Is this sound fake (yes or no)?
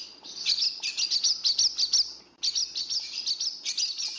no